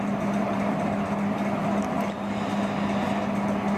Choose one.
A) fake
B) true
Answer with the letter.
B